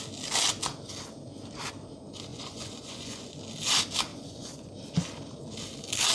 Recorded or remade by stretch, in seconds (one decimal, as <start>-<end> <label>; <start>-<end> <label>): 0.0-2.3 recorded; 2.3-3.4 remade; 3.4-4.1 recorded; 4.1-4.7 remade; 4.7-6.1 recorded

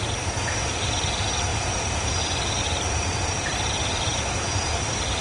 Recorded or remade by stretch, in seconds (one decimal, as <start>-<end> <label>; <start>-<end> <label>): 0.0-5.2 recorded

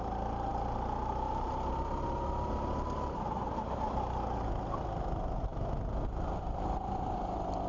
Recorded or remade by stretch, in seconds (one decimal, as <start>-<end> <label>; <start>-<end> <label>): 0.0-7.7 recorded

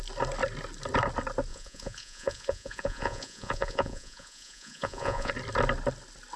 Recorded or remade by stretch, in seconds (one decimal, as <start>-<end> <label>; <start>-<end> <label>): 0.0-1.5 recorded; 1.5-5.3 remade; 5.3-6.4 recorded

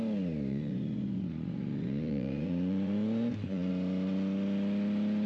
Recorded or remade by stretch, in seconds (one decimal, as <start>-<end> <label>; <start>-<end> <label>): 0.0-0.5 recorded; 0.5-3.7 remade; 3.7-5.3 recorded

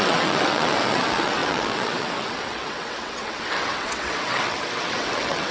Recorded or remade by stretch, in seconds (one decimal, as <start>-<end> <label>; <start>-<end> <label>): 0.0-5.5 remade

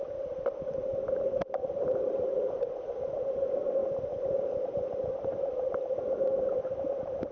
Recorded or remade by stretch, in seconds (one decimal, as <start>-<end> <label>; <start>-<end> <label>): 0.0-7.3 recorded